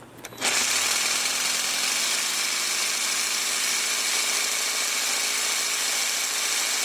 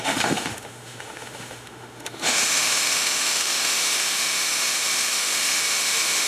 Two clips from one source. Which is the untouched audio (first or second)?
first